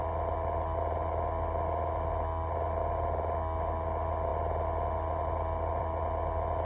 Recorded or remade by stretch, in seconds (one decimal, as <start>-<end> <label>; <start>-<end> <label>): 0.0-6.6 recorded